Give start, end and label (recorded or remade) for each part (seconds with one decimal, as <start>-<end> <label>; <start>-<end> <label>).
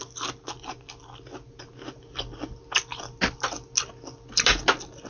0.0-5.1 recorded